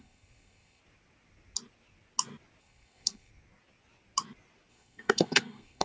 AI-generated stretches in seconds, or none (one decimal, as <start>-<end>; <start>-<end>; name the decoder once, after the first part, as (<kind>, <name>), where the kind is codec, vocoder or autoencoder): 0.0-0.8 (codec, SNAC); 2.6-3.3; 4.7-5.8